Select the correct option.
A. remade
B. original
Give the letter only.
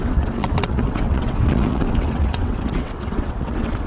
A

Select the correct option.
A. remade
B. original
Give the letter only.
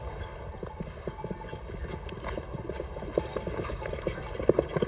B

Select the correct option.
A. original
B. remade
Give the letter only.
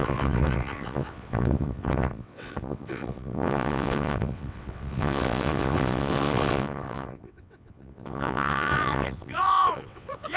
B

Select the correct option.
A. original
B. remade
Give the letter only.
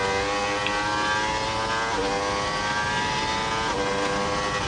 A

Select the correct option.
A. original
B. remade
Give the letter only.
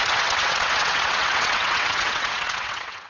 B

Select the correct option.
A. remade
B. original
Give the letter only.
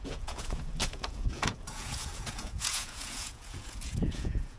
A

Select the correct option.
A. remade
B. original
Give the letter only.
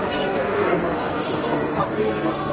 A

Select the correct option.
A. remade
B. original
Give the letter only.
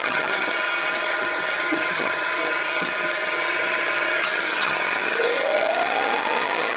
A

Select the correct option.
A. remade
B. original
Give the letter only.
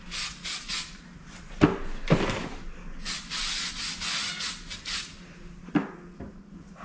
B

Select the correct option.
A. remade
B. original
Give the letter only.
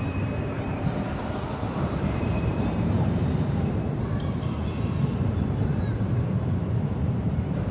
A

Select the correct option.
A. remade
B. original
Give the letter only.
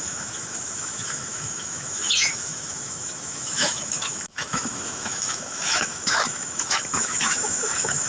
A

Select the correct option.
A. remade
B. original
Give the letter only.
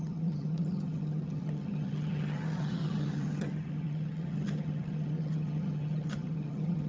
A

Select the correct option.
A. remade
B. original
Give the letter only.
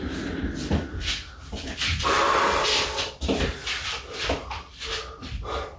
B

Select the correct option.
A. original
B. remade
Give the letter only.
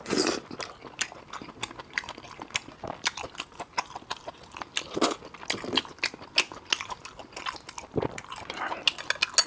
A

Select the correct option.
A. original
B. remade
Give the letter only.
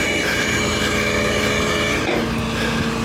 A